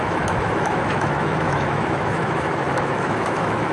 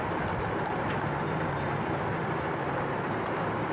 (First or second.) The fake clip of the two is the first